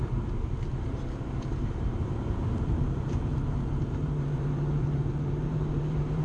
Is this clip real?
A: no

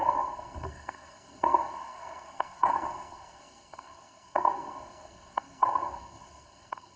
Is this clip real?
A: no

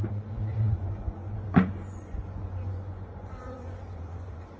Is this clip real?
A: no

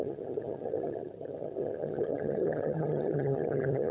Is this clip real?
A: no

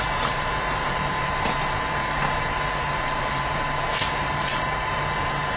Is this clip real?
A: no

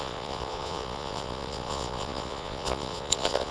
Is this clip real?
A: no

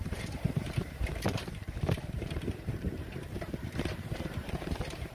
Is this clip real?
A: no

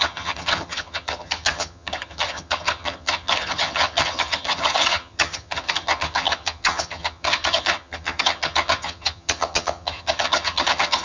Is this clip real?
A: no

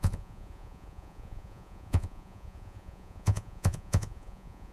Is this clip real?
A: no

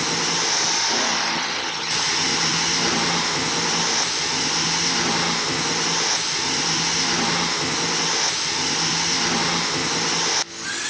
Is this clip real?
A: yes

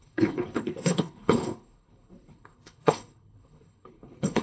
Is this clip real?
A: no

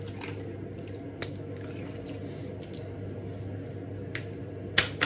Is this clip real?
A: yes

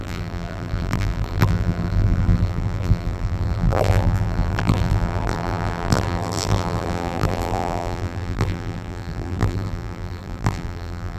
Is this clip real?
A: no